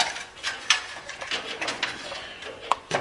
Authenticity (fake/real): fake